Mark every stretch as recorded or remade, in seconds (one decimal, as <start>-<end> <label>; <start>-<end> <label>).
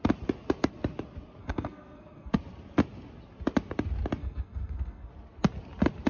0.0-1.4 recorded; 1.4-2.3 remade; 2.3-4.2 recorded; 4.2-5.1 remade; 5.1-6.1 recorded